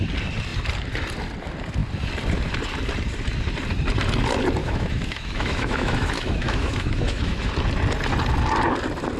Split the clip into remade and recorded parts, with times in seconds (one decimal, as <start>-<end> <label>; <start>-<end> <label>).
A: 0.0-4.6 recorded; 4.6-7.5 remade; 7.5-9.2 recorded